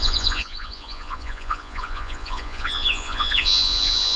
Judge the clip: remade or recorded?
remade